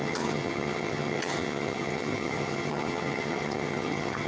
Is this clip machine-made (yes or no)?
yes